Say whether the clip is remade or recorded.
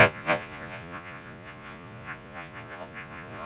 remade